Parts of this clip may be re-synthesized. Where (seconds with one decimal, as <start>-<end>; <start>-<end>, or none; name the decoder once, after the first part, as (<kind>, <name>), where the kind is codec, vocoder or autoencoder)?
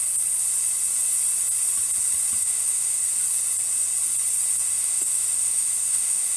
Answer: 2.4-3.0 (autoencoder, DAC-VAE); 4.5-6.4